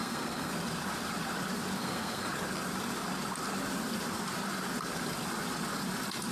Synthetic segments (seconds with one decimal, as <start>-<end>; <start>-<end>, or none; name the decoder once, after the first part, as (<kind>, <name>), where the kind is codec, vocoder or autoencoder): 0.0-0.5 (codec, SNAC); 1.8-2.3